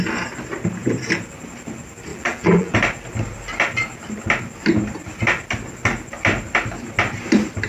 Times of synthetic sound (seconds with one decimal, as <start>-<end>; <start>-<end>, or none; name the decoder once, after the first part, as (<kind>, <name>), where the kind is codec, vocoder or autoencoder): 2.1-2.7 (vocoder, BigVGAN v2)